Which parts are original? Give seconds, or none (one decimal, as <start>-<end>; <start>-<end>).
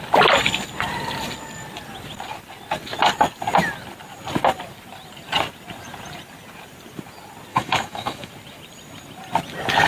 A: 0.0-7.5; 8.3-9.9